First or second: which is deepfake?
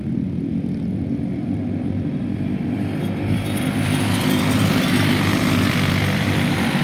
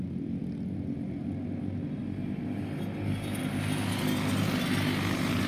first